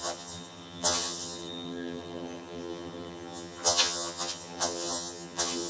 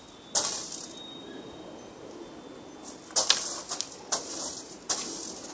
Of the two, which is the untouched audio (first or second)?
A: second